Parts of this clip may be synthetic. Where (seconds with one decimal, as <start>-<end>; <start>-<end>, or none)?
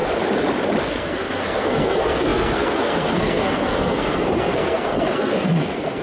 0.8-6.0